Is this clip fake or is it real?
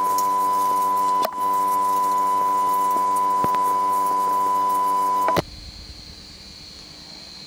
real